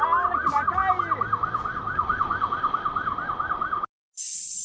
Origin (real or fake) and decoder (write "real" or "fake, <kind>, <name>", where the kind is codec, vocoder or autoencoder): real